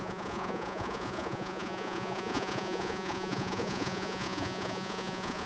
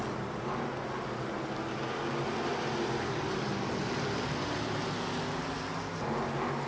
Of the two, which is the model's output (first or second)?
first